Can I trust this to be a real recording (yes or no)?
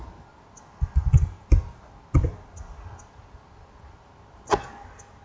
yes